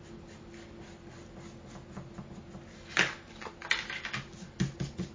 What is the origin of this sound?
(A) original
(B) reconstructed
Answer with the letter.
A